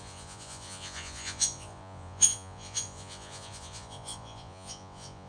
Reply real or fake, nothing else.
fake